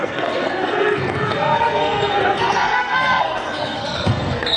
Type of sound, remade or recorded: remade